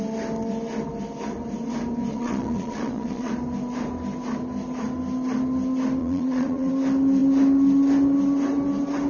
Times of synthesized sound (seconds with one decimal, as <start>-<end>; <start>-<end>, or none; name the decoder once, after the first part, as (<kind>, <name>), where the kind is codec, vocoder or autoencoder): 2.1-3.3 (vocoder, Vocos); 6.0-6.7

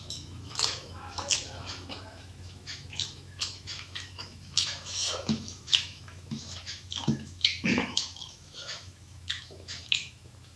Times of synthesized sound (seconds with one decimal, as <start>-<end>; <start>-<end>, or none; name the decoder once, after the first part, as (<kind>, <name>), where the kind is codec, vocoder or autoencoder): 0.0-10.6 (autoencoder, DAC-VAE)

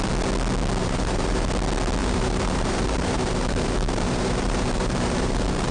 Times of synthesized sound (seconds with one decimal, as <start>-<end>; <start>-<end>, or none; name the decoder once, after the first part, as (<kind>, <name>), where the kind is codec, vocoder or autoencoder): 0.8-1.5 (vocoder, BigVGAN v2); 2.0-5.7

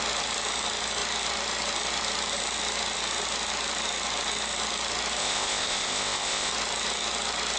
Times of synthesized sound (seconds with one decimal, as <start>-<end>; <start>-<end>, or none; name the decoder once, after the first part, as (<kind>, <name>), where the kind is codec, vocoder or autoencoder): 5.2-6.5 (codec, ZipCodec)